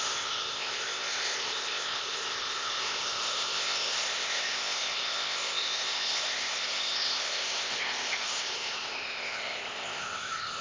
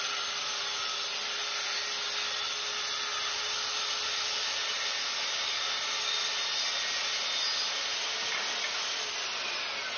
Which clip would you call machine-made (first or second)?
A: first